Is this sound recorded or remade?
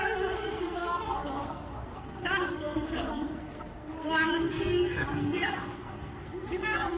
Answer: remade